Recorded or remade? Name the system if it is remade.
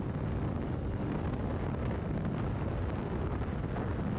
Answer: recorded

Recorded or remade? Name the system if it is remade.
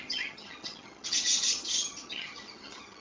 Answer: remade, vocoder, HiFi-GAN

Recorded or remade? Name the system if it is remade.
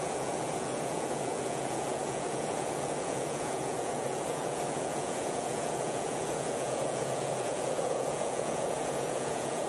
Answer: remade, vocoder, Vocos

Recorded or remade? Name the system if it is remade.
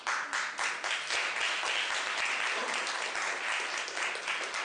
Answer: recorded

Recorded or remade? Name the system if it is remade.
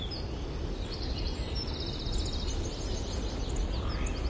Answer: recorded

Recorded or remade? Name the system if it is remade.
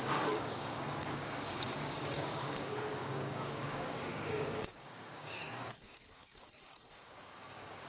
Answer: remade, codec, DAC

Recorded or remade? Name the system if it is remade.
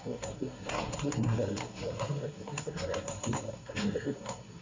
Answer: remade, codec, SNAC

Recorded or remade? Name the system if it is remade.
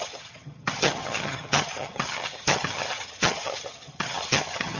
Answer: remade, vocoder, HiFi-GAN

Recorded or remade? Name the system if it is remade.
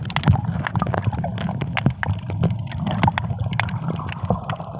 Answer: recorded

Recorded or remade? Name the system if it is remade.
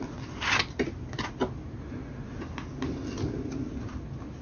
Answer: recorded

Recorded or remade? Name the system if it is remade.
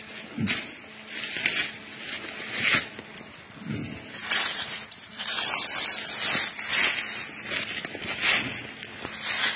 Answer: recorded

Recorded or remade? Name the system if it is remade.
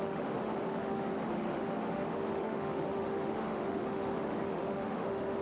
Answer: remade, autoencoder, DAC-VAE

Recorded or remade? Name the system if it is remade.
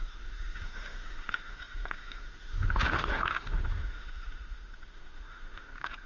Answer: remade, autoencoder, DAC-VAE